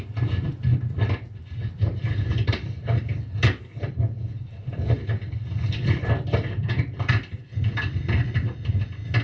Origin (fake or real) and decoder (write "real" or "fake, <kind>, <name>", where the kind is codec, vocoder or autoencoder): fake, vocoder, BigVGAN v2